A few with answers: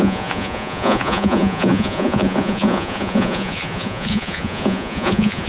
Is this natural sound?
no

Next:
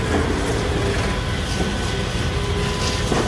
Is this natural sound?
yes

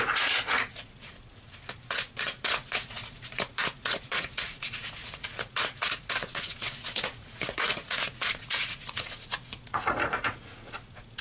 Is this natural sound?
no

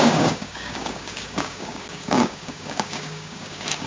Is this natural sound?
no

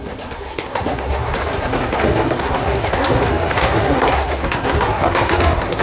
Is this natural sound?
no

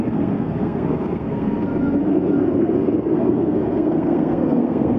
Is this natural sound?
no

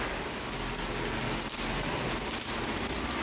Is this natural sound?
yes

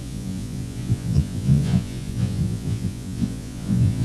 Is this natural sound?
no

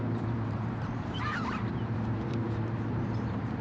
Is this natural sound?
no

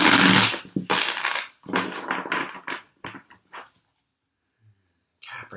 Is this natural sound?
yes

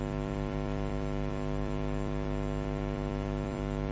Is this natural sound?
no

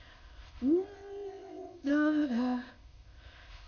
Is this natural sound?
no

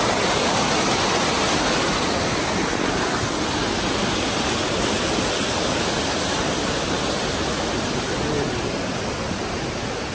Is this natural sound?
yes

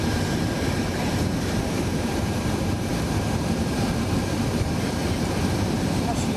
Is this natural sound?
no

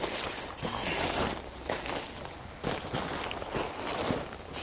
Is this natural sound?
yes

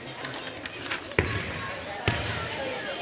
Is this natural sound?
yes